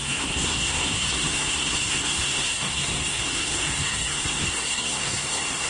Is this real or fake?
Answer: fake